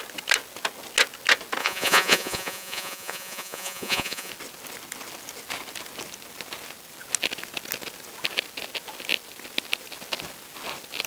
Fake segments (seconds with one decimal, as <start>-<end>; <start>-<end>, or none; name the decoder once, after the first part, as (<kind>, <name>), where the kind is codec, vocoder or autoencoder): 1.6-4.3 (vocoder, Vocos)